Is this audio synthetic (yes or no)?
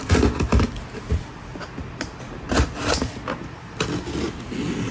no